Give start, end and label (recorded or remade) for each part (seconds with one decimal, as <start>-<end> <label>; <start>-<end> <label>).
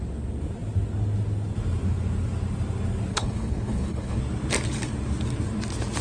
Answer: 0.0-3.1 recorded; 3.1-4.2 remade; 4.2-6.0 recorded